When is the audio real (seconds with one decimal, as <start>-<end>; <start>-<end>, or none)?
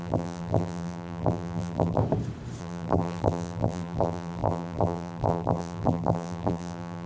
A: 2.0-2.6